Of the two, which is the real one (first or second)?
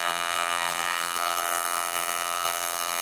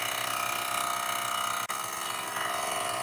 second